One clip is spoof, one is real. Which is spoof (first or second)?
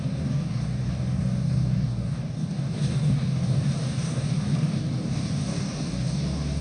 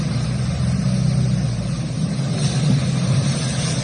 first